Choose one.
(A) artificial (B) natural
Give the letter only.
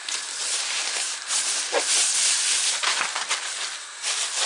B